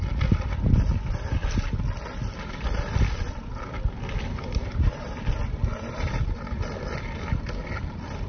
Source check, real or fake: real